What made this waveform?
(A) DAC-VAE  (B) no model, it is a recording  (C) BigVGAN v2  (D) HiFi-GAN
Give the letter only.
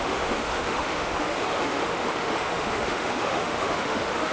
A